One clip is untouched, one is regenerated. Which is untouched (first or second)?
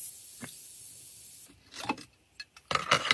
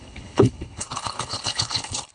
first